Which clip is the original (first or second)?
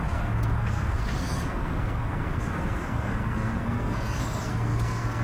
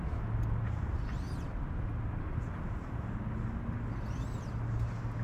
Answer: second